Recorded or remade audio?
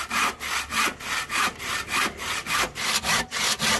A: recorded